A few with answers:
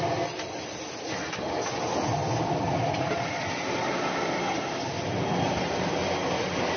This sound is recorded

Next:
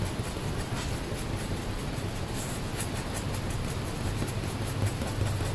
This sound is recorded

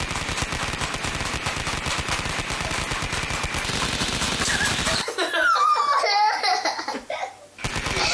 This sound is recorded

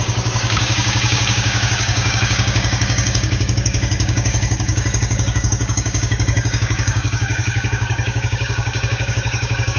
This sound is remade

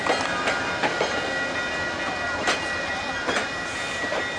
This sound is recorded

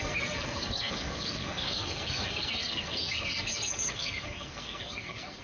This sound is remade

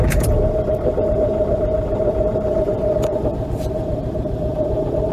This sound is remade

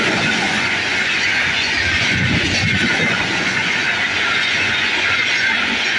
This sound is remade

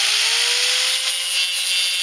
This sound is recorded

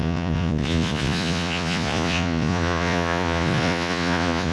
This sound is remade